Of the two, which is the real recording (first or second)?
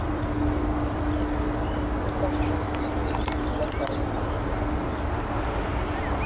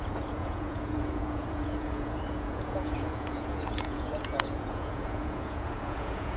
first